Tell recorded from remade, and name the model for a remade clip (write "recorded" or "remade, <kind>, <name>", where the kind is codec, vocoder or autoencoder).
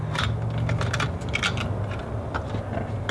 recorded